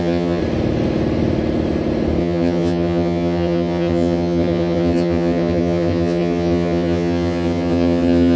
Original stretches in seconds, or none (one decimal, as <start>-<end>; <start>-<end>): 0.4-2.2

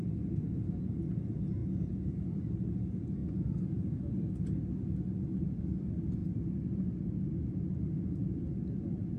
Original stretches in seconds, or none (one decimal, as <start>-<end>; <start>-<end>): 0.0-1.6; 2.2-3.2; 4.0-9.2

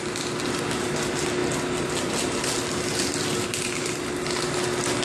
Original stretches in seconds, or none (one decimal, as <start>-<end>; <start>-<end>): 0.0-5.0

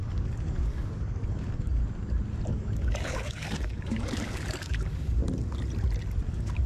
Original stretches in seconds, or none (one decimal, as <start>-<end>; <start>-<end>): 1.8-2.5; 5.2-6.3

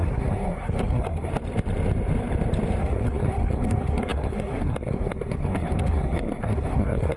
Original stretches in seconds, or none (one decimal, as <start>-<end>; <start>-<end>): 1.3-2.8

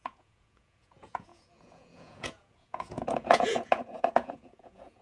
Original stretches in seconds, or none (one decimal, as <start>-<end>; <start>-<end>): none